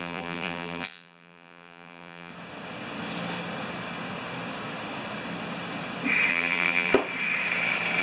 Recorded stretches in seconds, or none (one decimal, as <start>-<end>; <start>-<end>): 2.3-6.3; 6.9-8.0